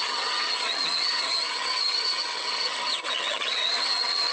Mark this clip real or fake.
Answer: fake